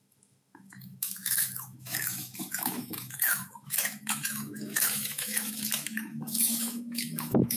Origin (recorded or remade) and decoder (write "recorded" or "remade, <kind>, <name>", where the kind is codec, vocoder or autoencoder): remade, autoencoder, DAC-VAE